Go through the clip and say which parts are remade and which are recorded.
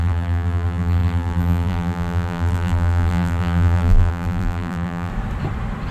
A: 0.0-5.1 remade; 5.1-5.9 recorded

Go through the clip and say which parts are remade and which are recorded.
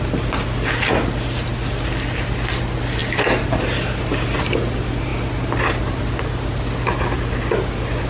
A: 0.0-8.1 recorded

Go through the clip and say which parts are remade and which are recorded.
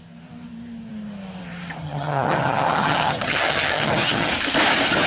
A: 0.0-1.8 recorded; 1.8-4.3 remade; 4.3-5.1 recorded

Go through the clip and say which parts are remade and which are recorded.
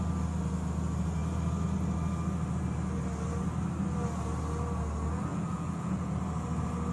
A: 0.0-5.3 recorded; 5.3-6.2 remade; 6.2-6.9 recorded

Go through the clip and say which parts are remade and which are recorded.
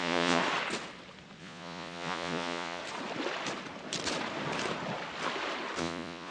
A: 0.0-0.4 remade; 0.4-1.4 recorded; 1.4-2.8 remade; 2.8-5.8 recorded; 5.8-6.3 remade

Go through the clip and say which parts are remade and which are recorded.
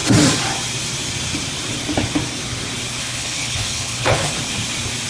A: 0.0-3.0 recorded; 3.0-4.3 remade; 4.3-5.1 recorded